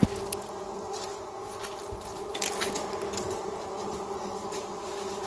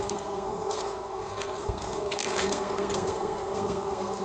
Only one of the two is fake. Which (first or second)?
second